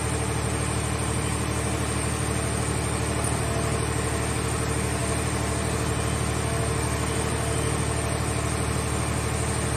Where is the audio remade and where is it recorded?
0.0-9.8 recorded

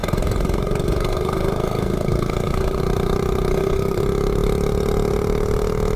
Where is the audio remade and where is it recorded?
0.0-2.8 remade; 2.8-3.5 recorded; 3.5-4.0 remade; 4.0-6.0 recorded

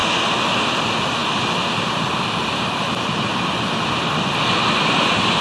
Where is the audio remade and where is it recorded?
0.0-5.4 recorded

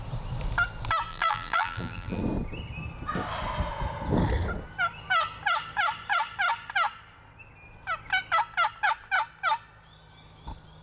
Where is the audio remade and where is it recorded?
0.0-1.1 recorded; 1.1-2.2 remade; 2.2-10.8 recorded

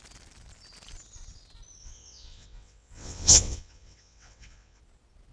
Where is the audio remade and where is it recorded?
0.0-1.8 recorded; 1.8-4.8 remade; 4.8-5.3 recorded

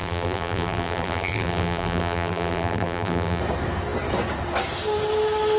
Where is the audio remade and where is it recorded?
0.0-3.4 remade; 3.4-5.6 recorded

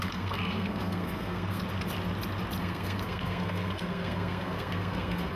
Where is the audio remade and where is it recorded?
0.0-1.6 remade; 1.6-2.6 recorded; 2.6-5.4 remade

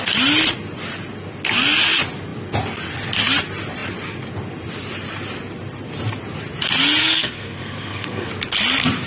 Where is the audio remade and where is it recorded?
0.0-7.0 recorded; 7.0-8.3 remade; 8.3-9.1 recorded